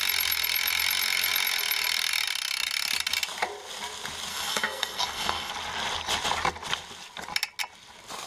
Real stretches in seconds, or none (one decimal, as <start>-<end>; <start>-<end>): 0.0-4.3; 5.5-8.3